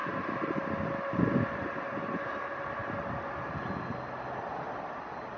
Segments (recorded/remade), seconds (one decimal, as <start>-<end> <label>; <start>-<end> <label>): 0.0-5.4 recorded